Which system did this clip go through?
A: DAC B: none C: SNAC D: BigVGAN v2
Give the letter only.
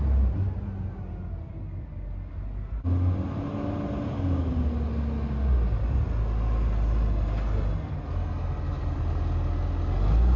B